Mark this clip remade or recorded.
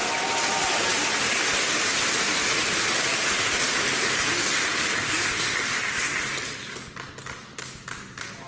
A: recorded